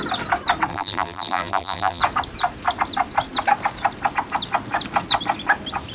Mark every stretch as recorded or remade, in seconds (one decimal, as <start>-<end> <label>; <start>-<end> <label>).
0.0-0.7 recorded; 0.7-2.0 remade; 2.0-5.9 recorded